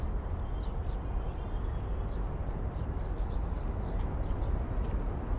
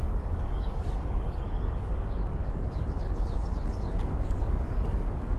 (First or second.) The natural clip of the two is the first